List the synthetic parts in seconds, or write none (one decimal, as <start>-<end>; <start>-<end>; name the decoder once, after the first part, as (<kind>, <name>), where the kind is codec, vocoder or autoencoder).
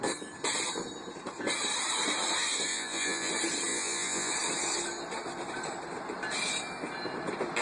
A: 2.7-3.3 (vocoder, Vocos); 3.7-4.3